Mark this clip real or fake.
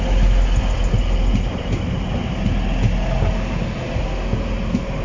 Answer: real